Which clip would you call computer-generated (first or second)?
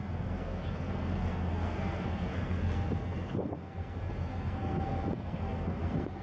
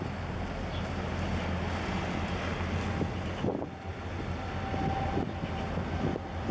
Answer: first